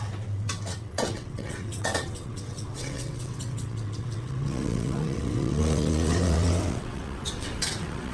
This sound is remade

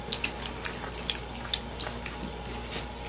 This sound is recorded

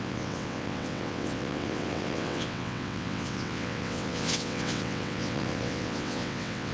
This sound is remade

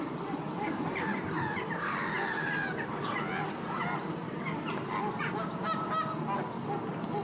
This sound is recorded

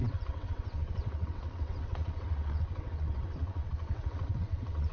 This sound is remade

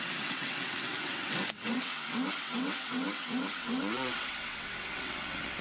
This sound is remade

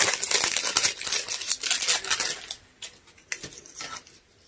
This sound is recorded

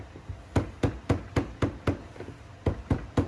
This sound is recorded